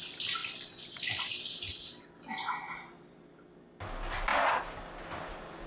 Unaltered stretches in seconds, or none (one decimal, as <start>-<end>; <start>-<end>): 0.0-5.7